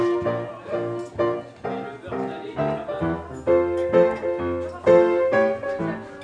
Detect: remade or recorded recorded